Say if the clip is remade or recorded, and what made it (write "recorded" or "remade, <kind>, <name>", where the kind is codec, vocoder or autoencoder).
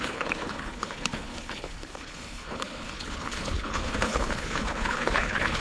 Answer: remade, codec, HILCodec